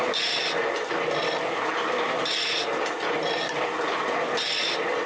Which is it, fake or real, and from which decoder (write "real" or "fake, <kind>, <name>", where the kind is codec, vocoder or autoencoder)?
real